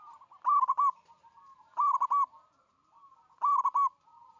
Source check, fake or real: real